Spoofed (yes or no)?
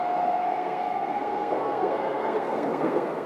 yes